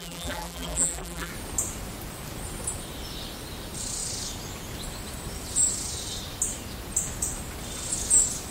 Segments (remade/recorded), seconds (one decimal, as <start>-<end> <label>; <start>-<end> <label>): 0.0-1.3 remade; 1.3-8.5 recorded

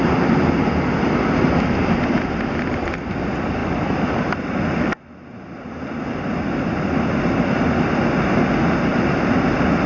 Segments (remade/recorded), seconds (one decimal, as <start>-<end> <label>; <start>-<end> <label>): 0.0-9.9 recorded

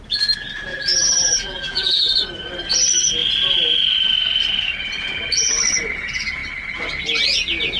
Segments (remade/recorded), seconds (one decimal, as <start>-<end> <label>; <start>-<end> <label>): 0.0-0.7 recorded; 0.7-2.1 remade; 2.1-7.8 recorded

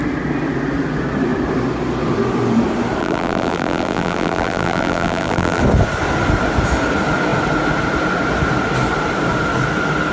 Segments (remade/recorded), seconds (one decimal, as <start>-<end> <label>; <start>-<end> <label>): 0.0-3.0 recorded; 3.0-5.6 remade; 5.6-10.1 recorded

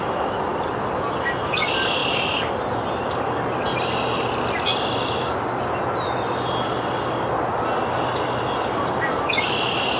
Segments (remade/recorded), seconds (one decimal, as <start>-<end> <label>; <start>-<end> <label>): 0.0-10.0 recorded

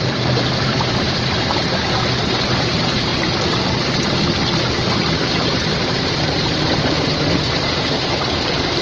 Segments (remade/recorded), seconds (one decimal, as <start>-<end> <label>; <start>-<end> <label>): 0.0-3.1 remade; 3.1-4.6 recorded; 4.6-8.8 remade

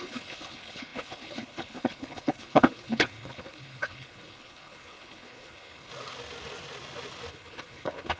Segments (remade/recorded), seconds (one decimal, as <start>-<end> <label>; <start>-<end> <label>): 0.0-5.9 remade; 5.9-7.3 recorded; 7.3-8.2 remade